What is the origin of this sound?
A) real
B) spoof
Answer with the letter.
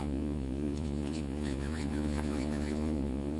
B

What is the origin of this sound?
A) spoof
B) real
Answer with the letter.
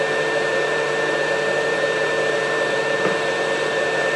A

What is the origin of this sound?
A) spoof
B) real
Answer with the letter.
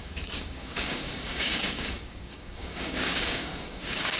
A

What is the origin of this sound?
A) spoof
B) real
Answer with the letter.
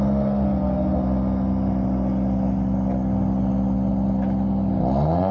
B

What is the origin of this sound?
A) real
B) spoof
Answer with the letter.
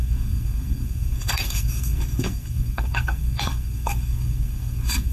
B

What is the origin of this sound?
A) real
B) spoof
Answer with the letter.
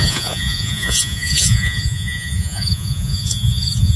B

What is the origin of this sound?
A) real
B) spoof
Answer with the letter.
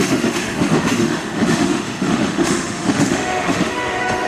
B